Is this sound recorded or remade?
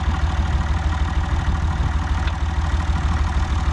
recorded